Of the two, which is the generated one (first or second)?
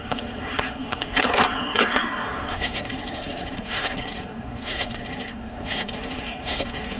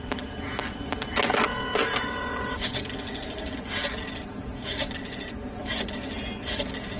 first